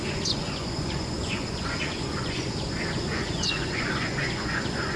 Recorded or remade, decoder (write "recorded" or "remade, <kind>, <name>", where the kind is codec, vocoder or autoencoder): remade, vocoder, Vocos